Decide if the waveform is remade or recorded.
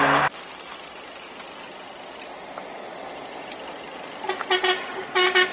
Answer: recorded